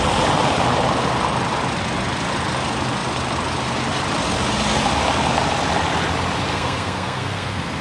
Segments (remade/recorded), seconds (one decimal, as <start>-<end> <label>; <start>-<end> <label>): 0.0-6.5 recorded; 6.5-7.8 remade